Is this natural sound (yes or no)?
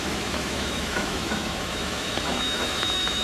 no